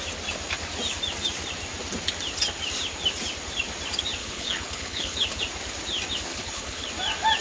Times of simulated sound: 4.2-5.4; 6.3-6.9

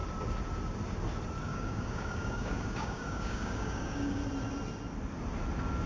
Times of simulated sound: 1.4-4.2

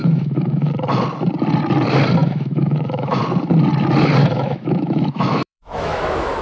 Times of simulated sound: 0.0-0.7; 2.2-3.2; 4.2-6.4

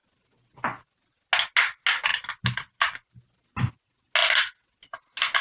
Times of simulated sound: none

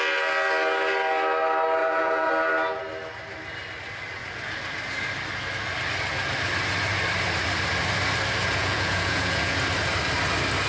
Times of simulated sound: 1.8-2.3; 8.4-9.6